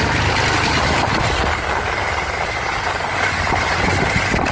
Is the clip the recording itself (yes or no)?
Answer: yes